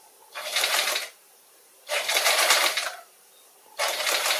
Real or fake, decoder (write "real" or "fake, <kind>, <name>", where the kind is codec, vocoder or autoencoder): fake, vocoder, BigVGAN v2